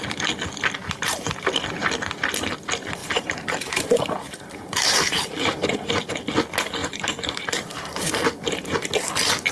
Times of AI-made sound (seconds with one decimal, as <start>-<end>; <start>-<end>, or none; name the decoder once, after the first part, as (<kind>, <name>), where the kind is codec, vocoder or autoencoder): 0.8-1.6 (vocoder, BigVGAN v2); 3.0-6.2; 6.8-8.9